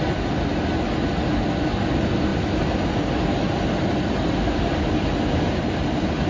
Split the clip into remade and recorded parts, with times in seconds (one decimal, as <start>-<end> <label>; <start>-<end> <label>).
0.0-6.3 recorded

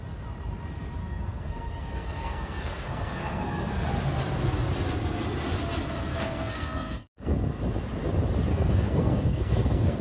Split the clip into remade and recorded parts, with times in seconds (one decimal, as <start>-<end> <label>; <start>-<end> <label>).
0.0-1.0 recorded; 1.0-3.9 remade; 3.9-6.1 recorded; 6.1-7.6 remade; 7.6-8.5 recorded; 8.5-10.0 remade

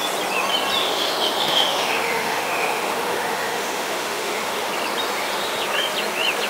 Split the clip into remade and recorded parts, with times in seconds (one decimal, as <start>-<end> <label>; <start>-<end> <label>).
0.0-0.8 recorded; 0.8-4.7 remade; 4.7-6.5 recorded

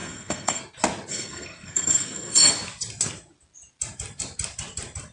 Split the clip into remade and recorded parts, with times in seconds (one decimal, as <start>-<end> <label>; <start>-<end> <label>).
0.0-0.6 remade; 0.6-1.1 recorded; 1.1-2.5 remade; 2.5-5.1 recorded

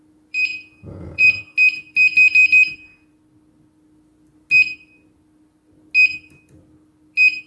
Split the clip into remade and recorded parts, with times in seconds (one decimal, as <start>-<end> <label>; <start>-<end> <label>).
0.0-0.5 recorded; 0.5-1.3 remade; 1.3-7.5 recorded

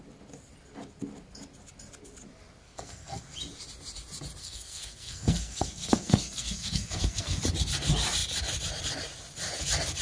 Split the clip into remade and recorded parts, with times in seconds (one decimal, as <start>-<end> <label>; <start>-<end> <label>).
0.0-2.6 recorded; 2.6-3.2 remade; 3.2-4.4 recorded; 4.4-7.4 remade; 7.4-10.0 recorded